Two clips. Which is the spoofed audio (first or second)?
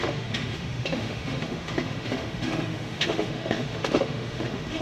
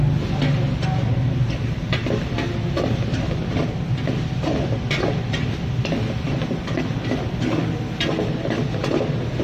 first